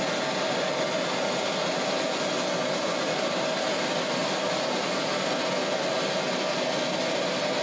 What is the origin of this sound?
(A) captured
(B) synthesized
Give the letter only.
A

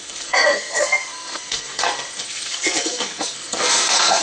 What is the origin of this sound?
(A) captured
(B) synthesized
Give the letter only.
B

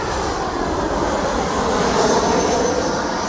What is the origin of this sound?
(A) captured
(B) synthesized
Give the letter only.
B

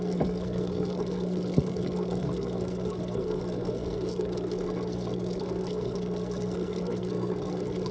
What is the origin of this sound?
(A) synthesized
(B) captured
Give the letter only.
A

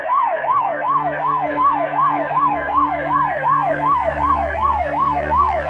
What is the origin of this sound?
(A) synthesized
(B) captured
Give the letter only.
A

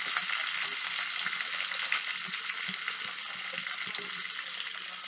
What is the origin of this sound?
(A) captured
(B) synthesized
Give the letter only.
A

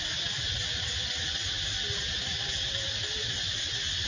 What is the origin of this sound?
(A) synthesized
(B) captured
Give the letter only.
B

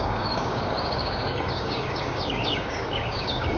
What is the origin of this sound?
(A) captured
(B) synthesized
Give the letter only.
B